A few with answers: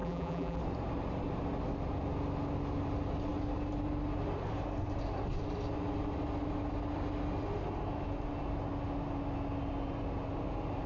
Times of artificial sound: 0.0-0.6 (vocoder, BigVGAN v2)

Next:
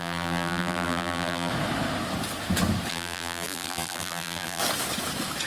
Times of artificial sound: 0.0-1.5 (vocoder, BigVGAN v2); 2.9-4.6